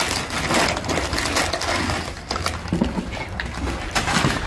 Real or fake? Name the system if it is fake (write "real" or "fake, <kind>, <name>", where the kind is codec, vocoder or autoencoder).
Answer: real